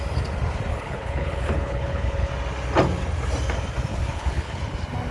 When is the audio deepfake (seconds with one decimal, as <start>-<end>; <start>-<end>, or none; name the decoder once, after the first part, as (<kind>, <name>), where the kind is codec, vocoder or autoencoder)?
0.7-2.3 (codec, HILCodec); 3.9-4.6